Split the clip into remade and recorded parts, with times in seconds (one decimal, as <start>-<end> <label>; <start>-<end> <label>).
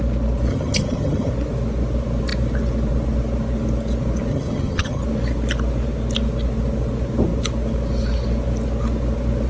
0.0-0.5 recorded; 0.5-1.3 remade; 1.3-4.3 recorded; 4.3-5.0 remade; 5.0-9.5 recorded